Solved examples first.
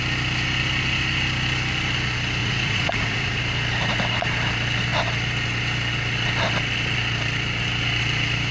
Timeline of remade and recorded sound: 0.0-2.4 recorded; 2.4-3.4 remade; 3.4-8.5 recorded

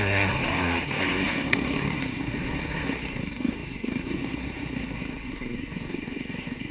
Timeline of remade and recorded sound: 0.0-6.7 remade

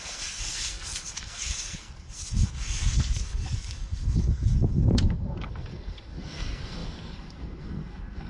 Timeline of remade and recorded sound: 0.0-8.3 remade

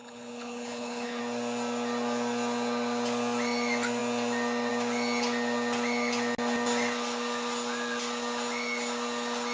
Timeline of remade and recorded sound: 0.0-1.2 remade; 1.2-9.5 recorded